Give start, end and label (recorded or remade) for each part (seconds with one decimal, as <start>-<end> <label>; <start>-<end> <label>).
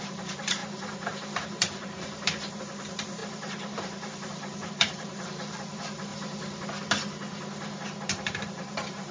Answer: 0.0-6.1 remade; 6.1-8.1 recorded; 8.1-9.1 remade